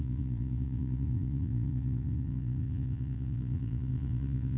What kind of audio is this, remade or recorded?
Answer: remade